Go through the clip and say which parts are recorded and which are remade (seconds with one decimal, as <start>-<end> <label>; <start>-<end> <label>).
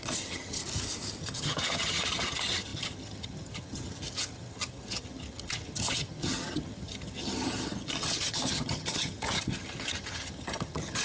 0.0-0.6 remade; 0.6-1.2 recorded; 1.2-11.0 remade